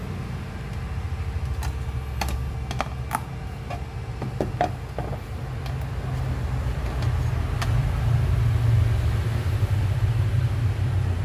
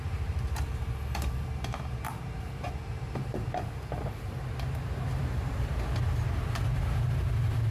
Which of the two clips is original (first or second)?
first